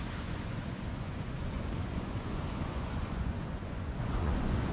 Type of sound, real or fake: fake